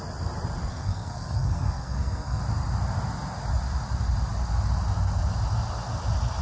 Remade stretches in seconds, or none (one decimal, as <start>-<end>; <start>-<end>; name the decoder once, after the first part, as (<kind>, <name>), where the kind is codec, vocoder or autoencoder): 0.7-2.4 (codec, SNAC)